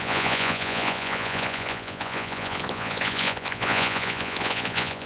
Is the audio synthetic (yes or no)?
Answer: yes